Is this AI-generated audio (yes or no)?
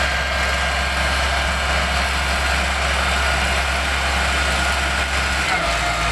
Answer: no